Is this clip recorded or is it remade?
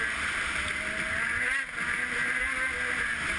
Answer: recorded